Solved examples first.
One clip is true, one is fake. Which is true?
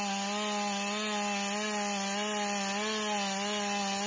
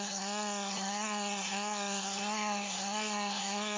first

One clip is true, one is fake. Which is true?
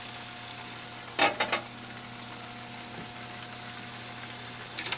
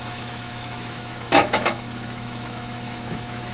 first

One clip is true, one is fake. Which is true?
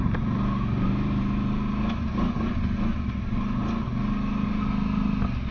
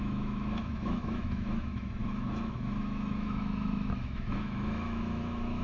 first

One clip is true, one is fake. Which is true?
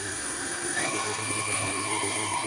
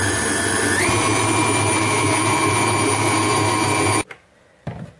second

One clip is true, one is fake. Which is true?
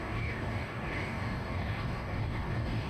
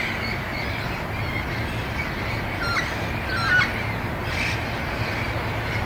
second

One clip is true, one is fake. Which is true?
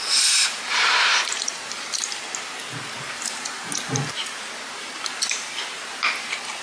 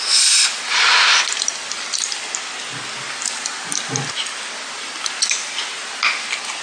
second